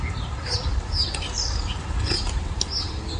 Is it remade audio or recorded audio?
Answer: recorded